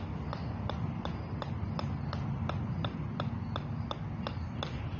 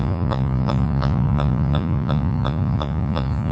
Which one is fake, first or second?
second